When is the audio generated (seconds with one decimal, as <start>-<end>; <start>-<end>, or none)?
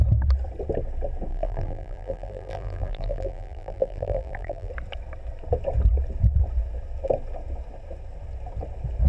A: 1.3-4.7